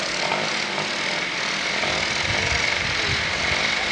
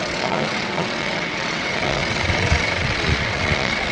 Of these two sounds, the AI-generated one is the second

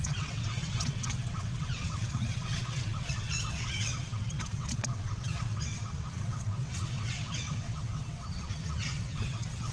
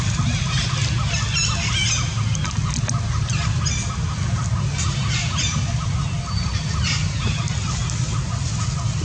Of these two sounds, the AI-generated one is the first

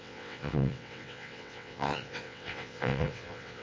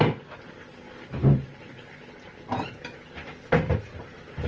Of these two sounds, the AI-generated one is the first